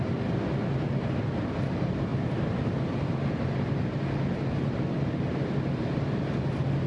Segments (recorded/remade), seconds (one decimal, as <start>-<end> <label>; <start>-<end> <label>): 0.0-6.9 recorded

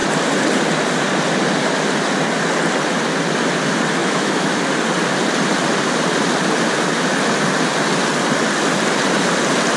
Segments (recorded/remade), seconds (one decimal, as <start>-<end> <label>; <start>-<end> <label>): 0.0-4.0 recorded; 4.0-4.6 remade; 4.6-9.8 recorded